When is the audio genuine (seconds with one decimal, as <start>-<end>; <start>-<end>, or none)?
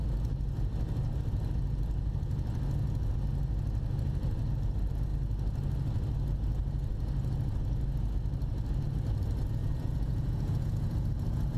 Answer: 0.0-9.6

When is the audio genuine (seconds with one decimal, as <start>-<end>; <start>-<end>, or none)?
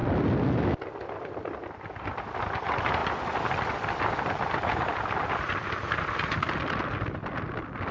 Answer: 0.0-7.9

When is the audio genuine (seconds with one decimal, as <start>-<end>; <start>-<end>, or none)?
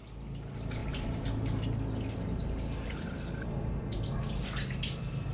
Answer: 0.0-5.3